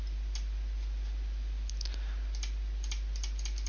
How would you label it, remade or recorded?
recorded